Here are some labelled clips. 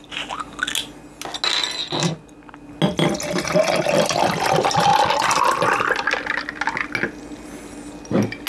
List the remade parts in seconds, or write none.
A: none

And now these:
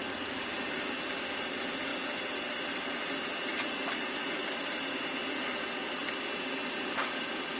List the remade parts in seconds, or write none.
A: none

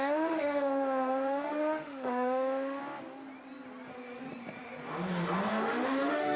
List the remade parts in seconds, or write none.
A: 0.0-2.8 (autoencoder, DAC-VAE); 5.5-6.4

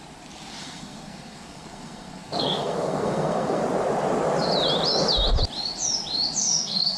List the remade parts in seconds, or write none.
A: 0.5-3.6 (codec, SNAC); 6.4-7.0